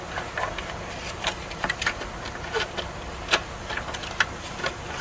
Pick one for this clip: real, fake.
real